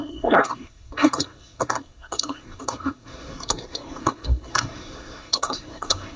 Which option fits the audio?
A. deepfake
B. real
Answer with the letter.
A